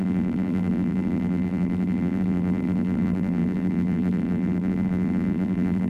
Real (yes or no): no